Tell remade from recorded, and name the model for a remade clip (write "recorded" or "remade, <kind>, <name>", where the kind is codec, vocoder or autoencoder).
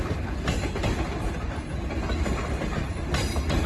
recorded